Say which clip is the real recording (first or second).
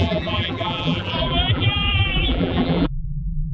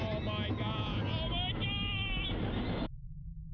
second